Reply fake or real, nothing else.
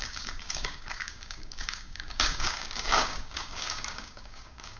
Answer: fake